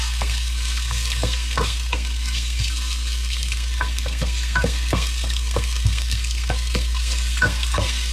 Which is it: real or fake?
fake